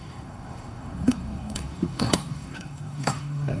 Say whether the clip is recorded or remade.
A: remade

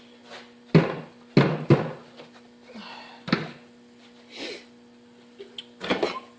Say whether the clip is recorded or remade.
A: recorded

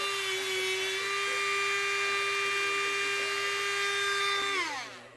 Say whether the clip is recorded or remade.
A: recorded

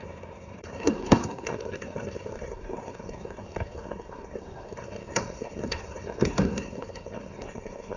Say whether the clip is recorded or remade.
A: remade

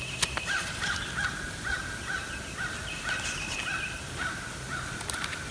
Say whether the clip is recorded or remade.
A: recorded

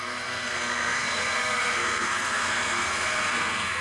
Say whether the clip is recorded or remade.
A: remade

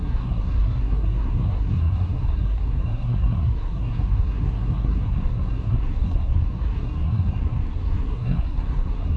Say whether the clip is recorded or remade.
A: remade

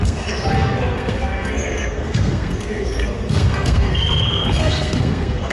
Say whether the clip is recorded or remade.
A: remade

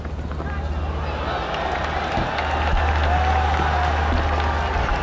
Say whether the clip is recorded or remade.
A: recorded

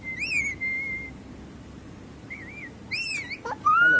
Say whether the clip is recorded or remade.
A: recorded